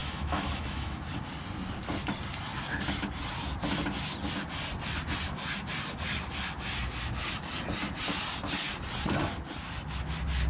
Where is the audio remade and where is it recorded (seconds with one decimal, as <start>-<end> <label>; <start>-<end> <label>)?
0.0-1.0 remade; 1.0-10.5 recorded

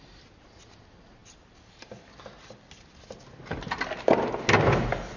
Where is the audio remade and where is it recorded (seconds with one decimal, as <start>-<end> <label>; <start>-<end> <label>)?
0.0-5.2 recorded

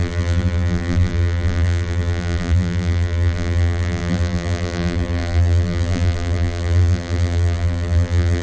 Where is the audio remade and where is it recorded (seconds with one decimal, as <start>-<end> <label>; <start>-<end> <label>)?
0.0-8.4 remade

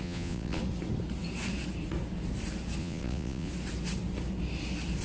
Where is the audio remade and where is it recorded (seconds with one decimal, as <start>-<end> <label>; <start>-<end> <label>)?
0.0-0.6 remade; 0.6-2.8 recorded; 2.8-3.5 remade; 3.5-5.0 recorded

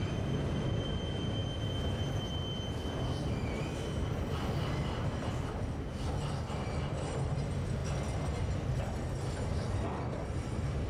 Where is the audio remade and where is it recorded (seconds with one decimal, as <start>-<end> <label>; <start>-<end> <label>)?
0.0-10.9 recorded

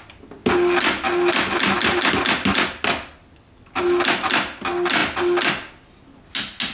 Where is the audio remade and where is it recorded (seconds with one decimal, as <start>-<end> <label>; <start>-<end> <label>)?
0.0-6.7 recorded

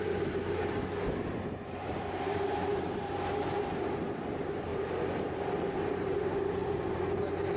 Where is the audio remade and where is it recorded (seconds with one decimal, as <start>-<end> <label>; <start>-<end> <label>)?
0.0-4.7 remade; 4.7-5.9 recorded; 5.9-7.6 remade